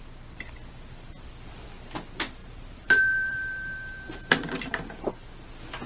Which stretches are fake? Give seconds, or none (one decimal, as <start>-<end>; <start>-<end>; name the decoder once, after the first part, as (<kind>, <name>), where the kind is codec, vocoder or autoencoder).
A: 2.4-5.1 (vocoder, BigVGAN v2)